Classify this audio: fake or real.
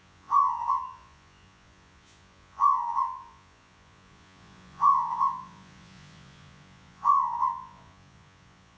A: fake